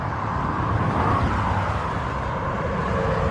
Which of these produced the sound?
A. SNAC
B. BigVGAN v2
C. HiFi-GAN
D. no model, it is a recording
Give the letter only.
B